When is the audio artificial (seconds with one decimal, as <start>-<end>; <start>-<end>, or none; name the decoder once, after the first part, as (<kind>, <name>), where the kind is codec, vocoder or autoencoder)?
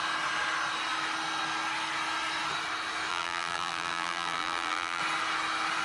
3.1-5.0 (vocoder, BigVGAN v2)